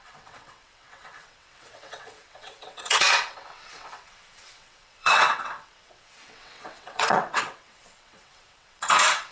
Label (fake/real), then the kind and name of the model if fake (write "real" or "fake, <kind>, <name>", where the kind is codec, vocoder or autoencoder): fake, vocoder, WaveNeXt